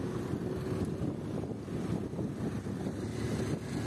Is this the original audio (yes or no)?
yes